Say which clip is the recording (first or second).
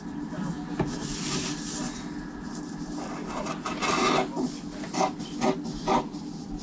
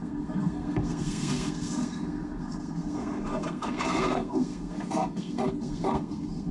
first